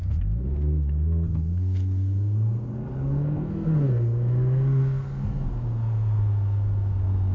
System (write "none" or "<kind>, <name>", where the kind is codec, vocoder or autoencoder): codec, SNAC